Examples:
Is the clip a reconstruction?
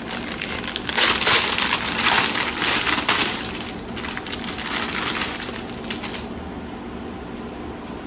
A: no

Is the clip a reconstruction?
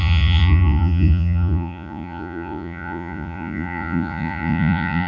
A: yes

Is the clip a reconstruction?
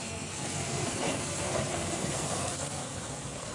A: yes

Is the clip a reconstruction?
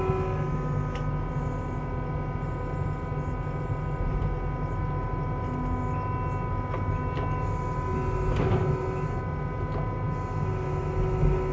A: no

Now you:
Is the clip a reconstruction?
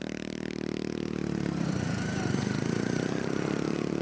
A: no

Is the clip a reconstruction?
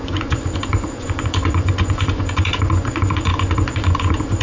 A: yes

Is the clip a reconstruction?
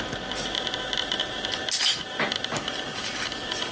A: no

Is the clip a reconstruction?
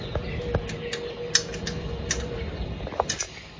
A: no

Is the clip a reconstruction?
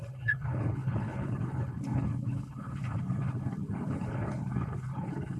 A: yes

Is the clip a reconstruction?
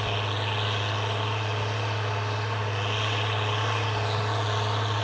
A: no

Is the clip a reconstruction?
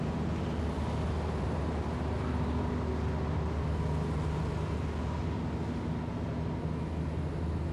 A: no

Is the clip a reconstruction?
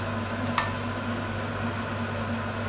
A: no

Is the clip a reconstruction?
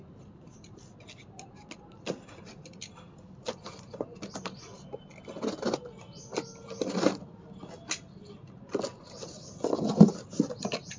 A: no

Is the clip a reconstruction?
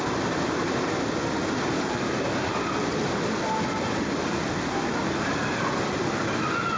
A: no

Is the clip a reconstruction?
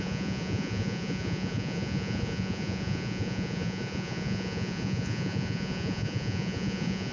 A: yes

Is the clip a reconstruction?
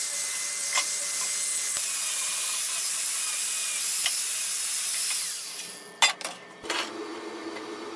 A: no